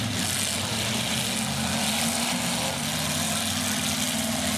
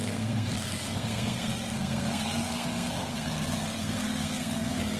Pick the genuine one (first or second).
first